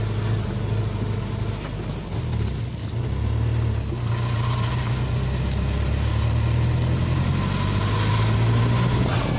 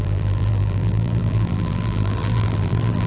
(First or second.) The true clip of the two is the first